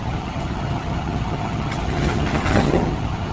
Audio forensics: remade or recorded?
remade